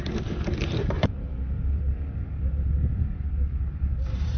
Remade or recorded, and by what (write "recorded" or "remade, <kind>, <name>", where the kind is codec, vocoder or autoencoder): remade, vocoder, BigVGAN v2